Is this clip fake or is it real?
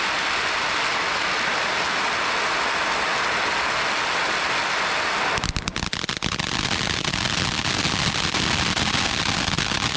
real